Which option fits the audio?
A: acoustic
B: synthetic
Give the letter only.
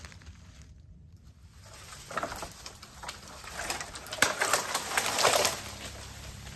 A